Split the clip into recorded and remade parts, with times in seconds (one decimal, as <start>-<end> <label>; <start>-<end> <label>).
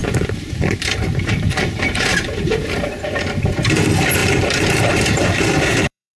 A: 0.0-6.2 remade